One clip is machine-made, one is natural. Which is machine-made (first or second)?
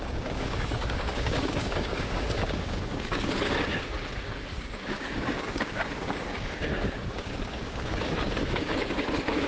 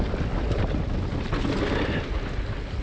first